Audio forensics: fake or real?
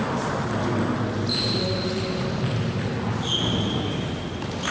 real